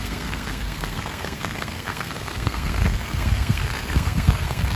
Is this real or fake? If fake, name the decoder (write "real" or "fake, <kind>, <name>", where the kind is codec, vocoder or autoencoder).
fake, codec, SNAC